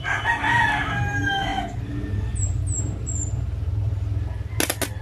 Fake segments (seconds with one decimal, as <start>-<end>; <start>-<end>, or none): none